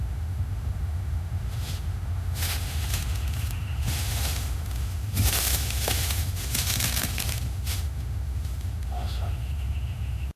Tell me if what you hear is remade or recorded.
remade